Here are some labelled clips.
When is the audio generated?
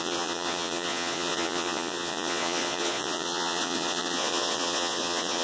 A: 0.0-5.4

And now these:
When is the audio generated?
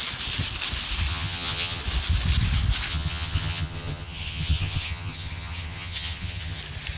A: 1.1-1.8; 2.9-6.6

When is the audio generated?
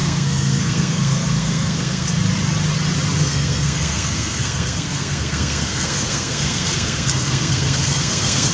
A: 0.0-2.1; 3.2-8.5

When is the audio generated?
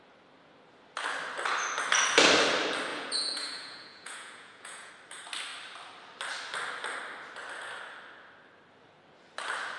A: 2.9-4.9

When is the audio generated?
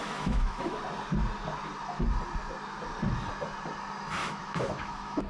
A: 0.0-0.8; 4.2-5.3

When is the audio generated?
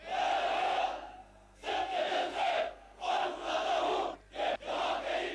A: 0.6-3.8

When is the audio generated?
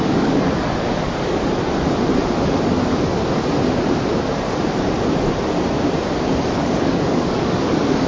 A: 0.0-1.4; 6.3-8.1